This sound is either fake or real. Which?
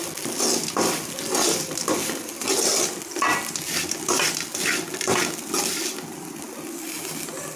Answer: real